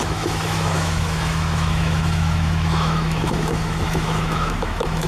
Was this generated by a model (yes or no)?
yes